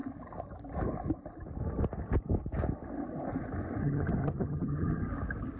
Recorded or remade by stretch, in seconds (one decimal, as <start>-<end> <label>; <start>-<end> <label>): 0.0-3.8 recorded; 3.8-5.1 remade; 5.1-5.6 recorded